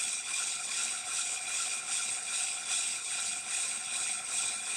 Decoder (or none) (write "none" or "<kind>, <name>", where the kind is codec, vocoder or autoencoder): codec, HILCodec